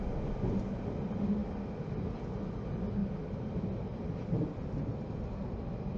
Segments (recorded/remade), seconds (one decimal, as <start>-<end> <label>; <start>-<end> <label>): 0.0-6.0 recorded